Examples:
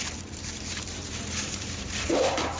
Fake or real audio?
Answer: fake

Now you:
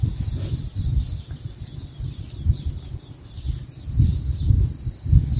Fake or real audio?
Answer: real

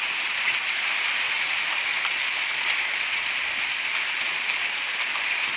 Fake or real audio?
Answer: real